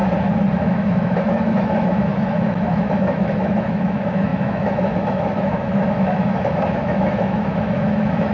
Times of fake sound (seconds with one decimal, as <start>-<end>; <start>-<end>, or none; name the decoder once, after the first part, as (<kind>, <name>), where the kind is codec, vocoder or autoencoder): 0.6-8.3 (autoencoder, DAC-VAE)